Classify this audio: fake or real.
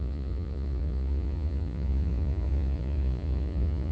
fake